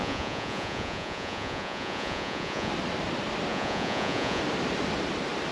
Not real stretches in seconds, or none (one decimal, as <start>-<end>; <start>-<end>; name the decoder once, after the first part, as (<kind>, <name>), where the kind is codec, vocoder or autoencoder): 0.0-2.7 (vocoder, Vocos); 3.5-4.4